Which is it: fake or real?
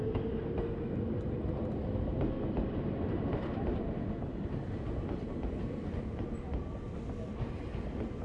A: real